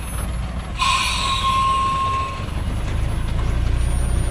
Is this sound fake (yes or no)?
no